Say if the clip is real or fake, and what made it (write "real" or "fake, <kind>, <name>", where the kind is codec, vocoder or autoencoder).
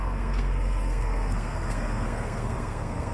fake, codec, SNAC